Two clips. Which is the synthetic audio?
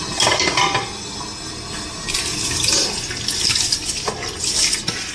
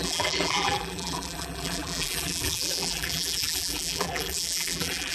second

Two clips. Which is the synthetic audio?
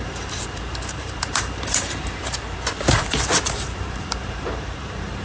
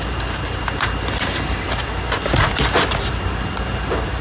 first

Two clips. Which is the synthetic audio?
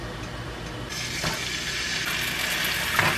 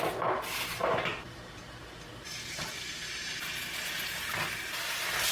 second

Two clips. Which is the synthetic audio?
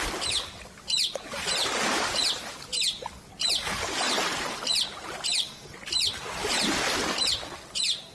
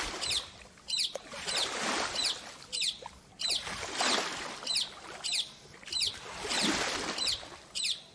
second